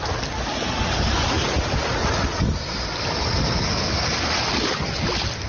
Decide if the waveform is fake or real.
real